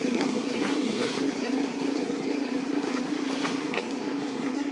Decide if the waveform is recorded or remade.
remade